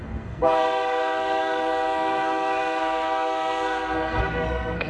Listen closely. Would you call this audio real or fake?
fake